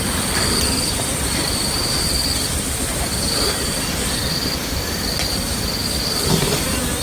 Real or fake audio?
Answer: real